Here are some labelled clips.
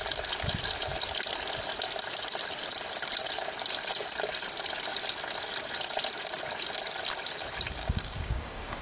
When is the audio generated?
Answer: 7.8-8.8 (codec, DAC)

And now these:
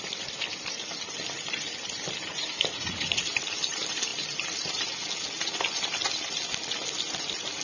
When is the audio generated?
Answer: 2.3-3.3 (vocoder, Vocos)

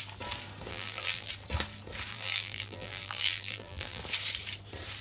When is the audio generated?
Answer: 0.7-1.3 (vocoder, BigVGAN v2); 2.1-4.0

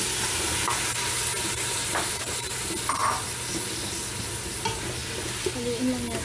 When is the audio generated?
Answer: 1.3-2.6 (vocoder, BigVGAN v2)

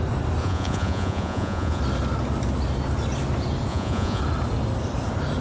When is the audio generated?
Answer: 0.4-1.8 (vocoder, Vocos); 3.7-4.2